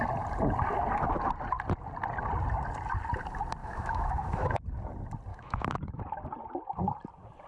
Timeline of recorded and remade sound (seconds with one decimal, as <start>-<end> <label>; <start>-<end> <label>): 0.0-3.6 recorded; 3.6-4.6 remade; 4.6-5.3 recorded; 5.3-6.0 remade; 6.0-7.5 recorded